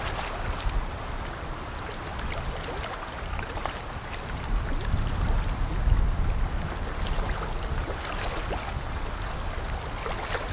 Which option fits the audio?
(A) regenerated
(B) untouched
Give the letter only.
B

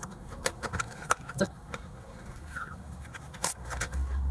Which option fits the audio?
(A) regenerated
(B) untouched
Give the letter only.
A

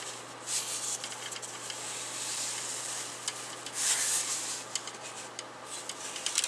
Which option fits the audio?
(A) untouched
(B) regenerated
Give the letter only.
A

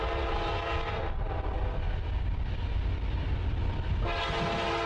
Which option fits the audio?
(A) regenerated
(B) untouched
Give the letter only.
B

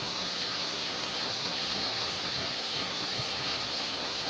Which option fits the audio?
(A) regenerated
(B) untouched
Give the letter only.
A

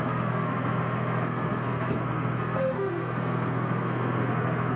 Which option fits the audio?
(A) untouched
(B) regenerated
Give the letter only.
B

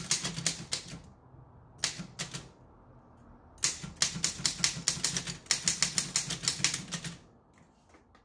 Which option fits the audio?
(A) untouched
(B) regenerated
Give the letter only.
A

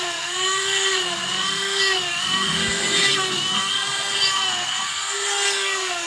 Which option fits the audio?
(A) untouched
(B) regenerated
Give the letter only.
B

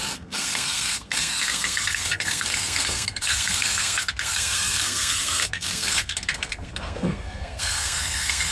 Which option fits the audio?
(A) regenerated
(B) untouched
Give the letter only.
A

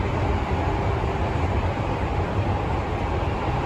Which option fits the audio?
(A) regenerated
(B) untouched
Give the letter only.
B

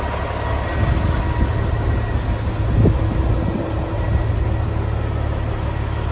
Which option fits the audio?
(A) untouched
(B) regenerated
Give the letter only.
A